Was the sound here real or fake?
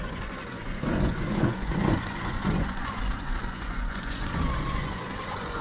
fake